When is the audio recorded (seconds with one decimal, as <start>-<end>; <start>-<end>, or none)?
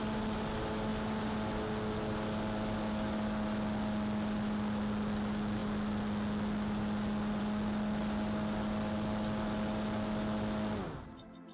0.0-11.5